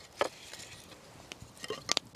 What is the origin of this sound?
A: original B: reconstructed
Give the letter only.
A